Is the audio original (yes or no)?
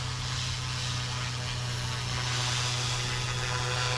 yes